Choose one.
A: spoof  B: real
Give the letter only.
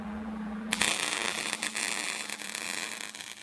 A